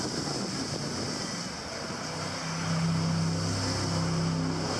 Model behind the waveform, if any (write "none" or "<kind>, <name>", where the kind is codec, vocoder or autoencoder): none